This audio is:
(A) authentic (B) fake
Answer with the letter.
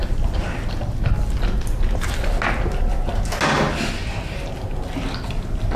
A